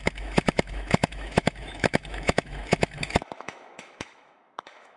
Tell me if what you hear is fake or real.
fake